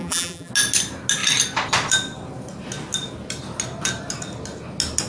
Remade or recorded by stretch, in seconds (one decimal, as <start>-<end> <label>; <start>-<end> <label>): 0.0-0.5 remade; 0.5-5.1 recorded